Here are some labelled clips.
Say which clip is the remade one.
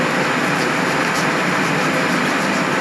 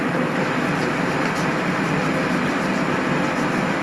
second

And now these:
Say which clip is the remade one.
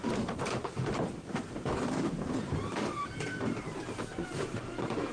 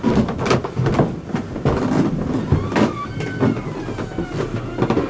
first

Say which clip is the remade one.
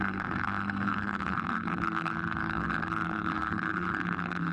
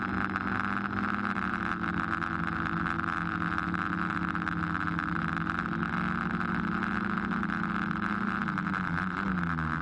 first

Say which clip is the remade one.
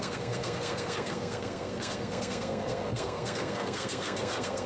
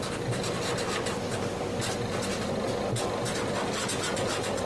first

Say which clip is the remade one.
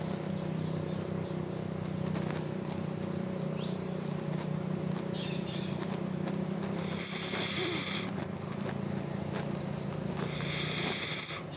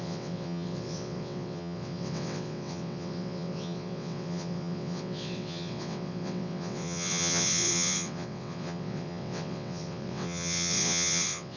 second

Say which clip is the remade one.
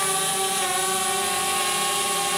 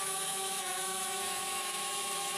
second